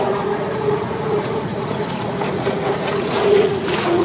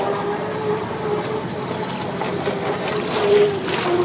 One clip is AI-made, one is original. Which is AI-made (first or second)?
first